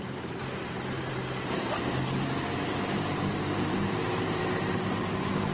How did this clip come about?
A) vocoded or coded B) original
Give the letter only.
A